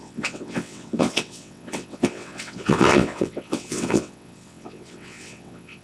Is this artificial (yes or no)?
yes